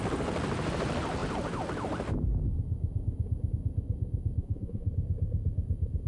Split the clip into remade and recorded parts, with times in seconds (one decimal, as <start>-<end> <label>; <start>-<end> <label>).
0.0-4.4 recorded; 4.4-4.9 remade; 4.9-6.1 recorded